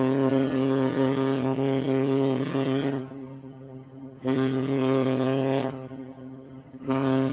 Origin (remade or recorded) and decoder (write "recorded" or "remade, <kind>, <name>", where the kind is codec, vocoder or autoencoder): remade, vocoder, HiFi-GAN